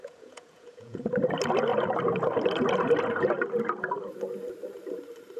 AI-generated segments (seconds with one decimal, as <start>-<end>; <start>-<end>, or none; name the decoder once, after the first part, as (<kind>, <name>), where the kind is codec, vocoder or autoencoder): 0.0-1.1 (vocoder, Vocos)